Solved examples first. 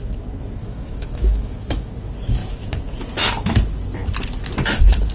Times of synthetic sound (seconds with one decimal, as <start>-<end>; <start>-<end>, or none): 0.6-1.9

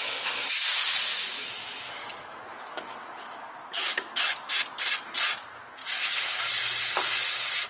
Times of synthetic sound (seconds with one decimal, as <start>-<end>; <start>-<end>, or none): 1.1-4.6; 5.8-6.4

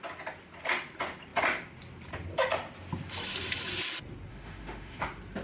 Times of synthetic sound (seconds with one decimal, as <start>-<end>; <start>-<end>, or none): 4.3-5.0

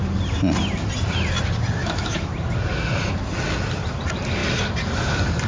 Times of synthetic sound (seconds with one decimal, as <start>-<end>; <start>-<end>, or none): 1.8-2.3